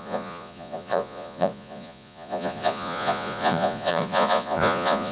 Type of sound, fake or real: fake